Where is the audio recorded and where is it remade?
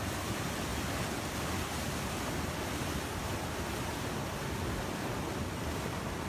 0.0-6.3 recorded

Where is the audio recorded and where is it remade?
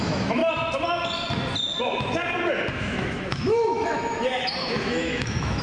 0.0-0.4 remade; 0.4-2.7 recorded; 2.7-5.6 remade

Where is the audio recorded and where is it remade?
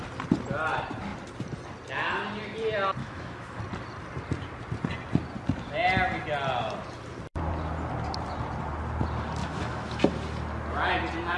0.0-3.0 recorded; 3.0-3.6 remade; 3.6-9.4 recorded; 9.4-10.0 remade; 10.0-11.4 recorded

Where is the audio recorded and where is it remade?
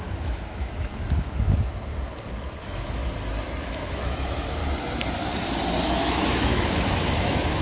0.0-0.9 remade; 0.9-2.6 recorded; 2.6-3.0 remade; 3.0-3.6 recorded; 3.6-4.6 remade; 4.6-5.8 recorded; 5.8-7.6 remade